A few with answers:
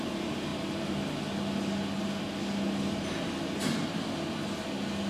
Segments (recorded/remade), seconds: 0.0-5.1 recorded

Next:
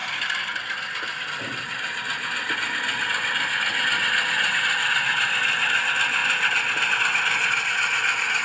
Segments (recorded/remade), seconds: 0.0-0.6 remade; 0.6-8.4 recorded

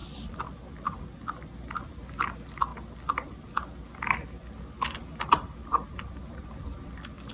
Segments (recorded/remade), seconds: 0.0-1.0 remade; 1.0-5.0 recorded; 5.0-6.4 remade; 6.4-7.3 recorded

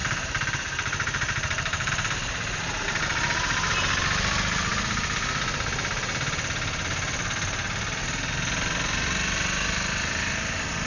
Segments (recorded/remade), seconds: 0.0-1.9 remade; 1.9-10.9 recorded

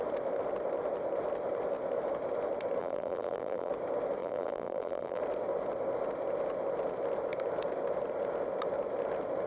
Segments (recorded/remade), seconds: 0.0-2.8 recorded; 2.8-3.7 remade; 3.7-4.2 recorded; 4.2-5.2 remade; 5.2-9.5 recorded

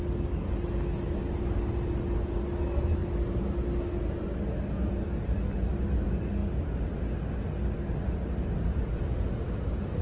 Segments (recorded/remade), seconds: 0.0-6.4 recorded; 6.4-7.0 remade; 7.0-10.0 recorded

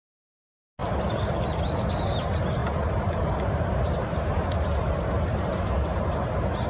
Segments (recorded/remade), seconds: 0.0-0.8 recorded; 0.8-1.6 remade; 1.6-2.6 recorded; 2.6-6.3 remade; 6.3-6.7 recorded